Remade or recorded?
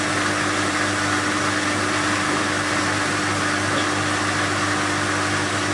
recorded